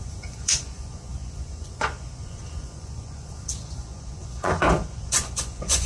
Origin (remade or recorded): remade